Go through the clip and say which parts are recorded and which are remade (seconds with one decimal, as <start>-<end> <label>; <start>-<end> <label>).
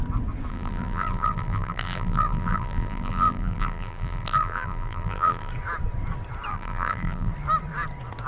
0.0-0.5 recorded; 0.5-5.5 remade; 5.5-6.5 recorded; 6.5-7.3 remade; 7.3-8.3 recorded